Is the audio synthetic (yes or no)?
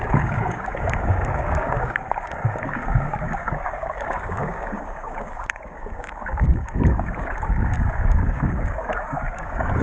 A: yes